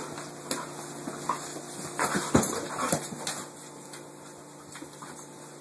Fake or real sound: real